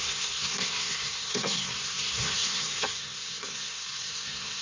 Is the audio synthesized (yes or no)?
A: yes